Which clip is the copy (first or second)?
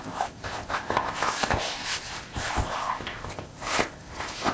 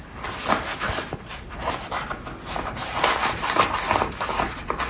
first